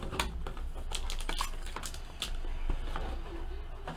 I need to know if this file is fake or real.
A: real